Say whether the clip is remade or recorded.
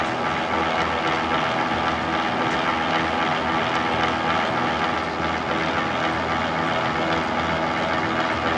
recorded